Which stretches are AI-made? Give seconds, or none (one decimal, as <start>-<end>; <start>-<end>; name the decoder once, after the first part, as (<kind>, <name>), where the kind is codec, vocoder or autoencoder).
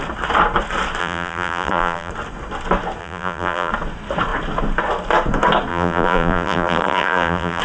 1.0-2.1 (vocoder, BigVGAN v2); 3.0-3.7; 5.7-7.6